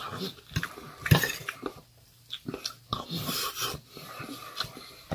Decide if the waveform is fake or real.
real